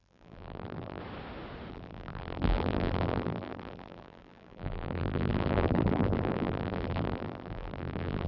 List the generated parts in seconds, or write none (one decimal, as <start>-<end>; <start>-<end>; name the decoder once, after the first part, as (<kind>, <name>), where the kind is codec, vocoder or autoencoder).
0.0-1.0 (vocoder, BigVGAN v2); 1.7-8.3